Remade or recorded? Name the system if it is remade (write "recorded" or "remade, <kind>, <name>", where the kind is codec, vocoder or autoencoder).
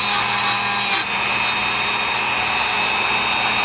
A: recorded